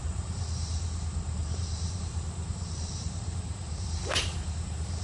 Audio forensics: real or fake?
fake